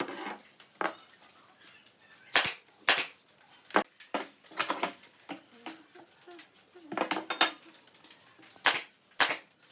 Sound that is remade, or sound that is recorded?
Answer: recorded